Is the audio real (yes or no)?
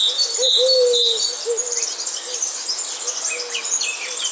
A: yes